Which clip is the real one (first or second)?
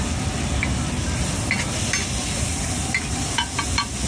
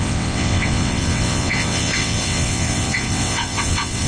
first